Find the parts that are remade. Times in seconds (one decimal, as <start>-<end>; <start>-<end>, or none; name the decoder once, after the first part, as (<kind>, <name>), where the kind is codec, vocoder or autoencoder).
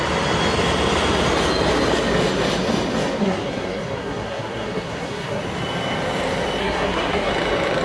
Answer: 3.2-5.4 (codec, SNAC); 6.6-7.3